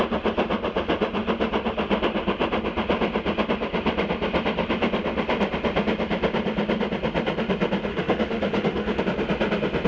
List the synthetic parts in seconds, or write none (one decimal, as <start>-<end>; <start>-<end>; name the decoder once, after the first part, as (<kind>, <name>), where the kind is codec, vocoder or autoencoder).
7.9-9.0 (autoencoder, DAC-VAE)